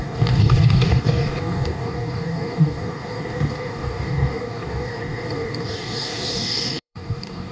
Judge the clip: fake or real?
fake